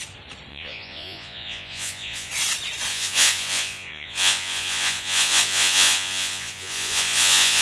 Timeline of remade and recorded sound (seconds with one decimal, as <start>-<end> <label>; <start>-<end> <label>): 0.0-0.5 recorded; 0.5-2.3 remade; 2.3-2.9 recorded; 2.9-7.6 remade